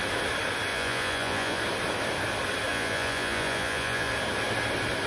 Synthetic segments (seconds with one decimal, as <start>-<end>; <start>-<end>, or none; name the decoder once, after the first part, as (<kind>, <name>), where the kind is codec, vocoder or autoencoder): 0.7-1.6 (vocoder, Vocos); 2.7-4.1

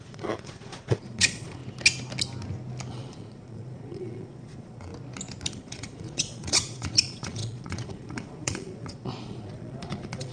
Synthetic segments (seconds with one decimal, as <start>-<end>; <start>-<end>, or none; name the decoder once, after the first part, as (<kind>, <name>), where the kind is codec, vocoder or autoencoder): 0.0-1.6 (vocoder, Vocos); 2.9-4.9; 5.5-10.3

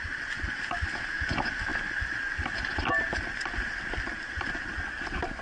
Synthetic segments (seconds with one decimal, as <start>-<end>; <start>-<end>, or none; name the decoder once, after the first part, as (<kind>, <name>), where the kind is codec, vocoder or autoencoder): none

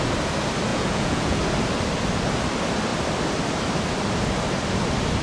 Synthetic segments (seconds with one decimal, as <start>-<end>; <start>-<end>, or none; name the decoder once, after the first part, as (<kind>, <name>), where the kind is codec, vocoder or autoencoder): 0.7-1.4 (vocoder, Vocos)

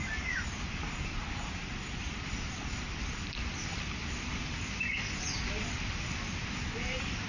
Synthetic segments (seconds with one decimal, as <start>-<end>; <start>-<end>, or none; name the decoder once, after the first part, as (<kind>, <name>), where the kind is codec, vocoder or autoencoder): none